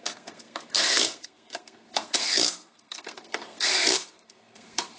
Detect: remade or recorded remade